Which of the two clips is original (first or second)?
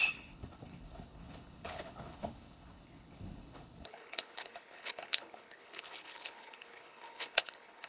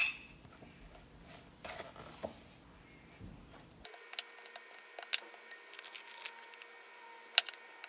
second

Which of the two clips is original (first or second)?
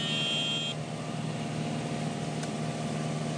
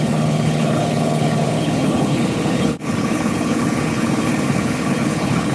first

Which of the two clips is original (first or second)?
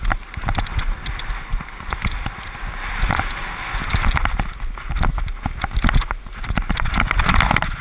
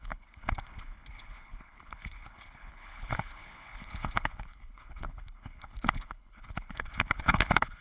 first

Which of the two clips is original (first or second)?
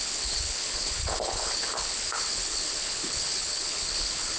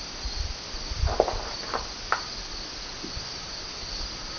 second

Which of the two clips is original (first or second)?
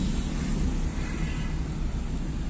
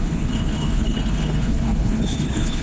first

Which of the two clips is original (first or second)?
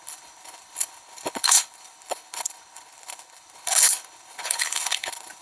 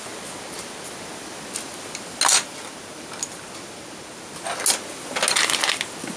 second